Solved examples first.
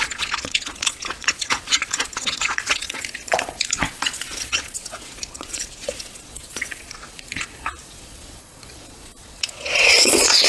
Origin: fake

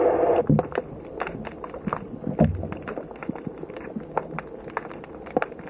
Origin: real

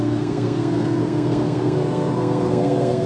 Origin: fake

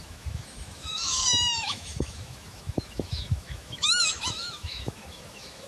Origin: fake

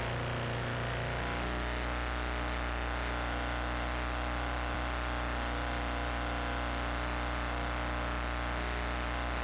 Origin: real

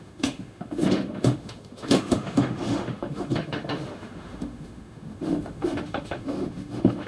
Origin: fake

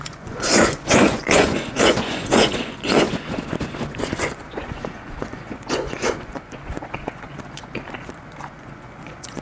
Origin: fake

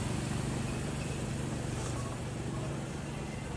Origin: real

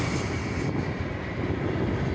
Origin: real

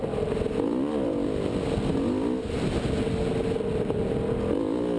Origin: real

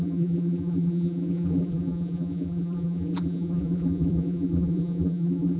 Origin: fake